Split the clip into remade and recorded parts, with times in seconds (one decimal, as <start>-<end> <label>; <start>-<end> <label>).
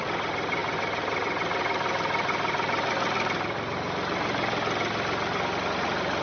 0.0-6.2 recorded